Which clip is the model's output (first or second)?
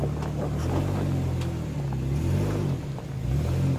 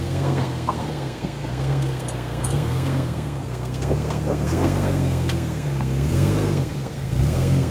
second